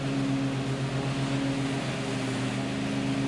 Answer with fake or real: real